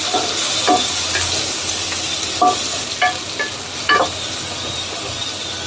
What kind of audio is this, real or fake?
real